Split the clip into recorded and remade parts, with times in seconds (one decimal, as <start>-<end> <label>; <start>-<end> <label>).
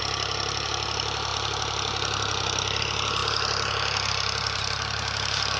0.0-5.6 recorded